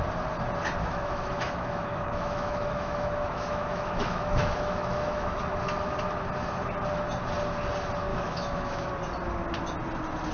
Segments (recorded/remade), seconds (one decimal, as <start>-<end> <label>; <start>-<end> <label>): 0.0-0.8 recorded; 0.8-5.4 remade; 5.4-8.1 recorded; 8.1-8.9 remade; 8.9-10.3 recorded